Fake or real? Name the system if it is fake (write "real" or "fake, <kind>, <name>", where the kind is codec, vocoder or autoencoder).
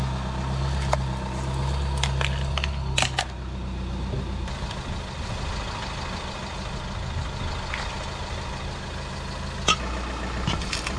real